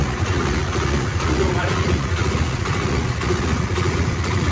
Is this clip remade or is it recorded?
remade